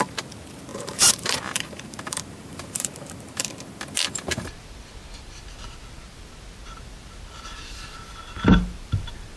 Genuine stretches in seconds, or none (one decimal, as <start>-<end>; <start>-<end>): 0.0-0.7; 3.2-9.4